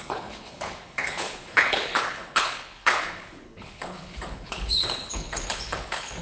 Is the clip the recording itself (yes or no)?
no